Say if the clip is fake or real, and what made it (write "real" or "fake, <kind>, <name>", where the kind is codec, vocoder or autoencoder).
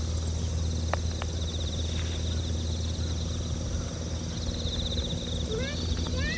real